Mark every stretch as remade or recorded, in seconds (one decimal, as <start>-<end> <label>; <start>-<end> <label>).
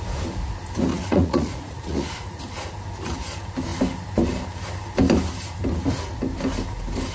0.0-0.9 recorded; 0.9-2.4 remade; 2.4-7.1 recorded